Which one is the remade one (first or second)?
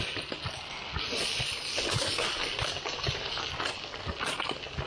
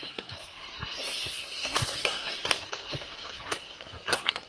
second